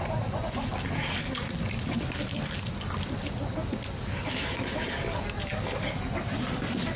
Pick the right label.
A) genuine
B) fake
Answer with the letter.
A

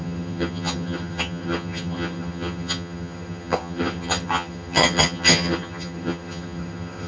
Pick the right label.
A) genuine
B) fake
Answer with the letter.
B